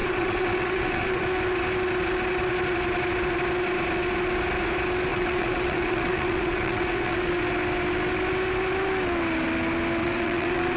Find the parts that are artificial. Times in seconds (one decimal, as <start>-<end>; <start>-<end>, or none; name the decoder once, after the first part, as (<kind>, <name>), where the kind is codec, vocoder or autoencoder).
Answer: 0.0-1.2 (vocoder, WaveNeXt); 5.1-7.3; 10.0-10.8